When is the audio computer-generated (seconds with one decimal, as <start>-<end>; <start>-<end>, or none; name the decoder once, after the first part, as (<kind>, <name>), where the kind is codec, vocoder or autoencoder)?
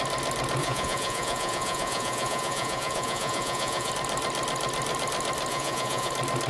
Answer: 0.6-3.9 (vocoder, Vocos); 5.5-6.1